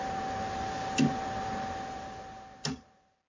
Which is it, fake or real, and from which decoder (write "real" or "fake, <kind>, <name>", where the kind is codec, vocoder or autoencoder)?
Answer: real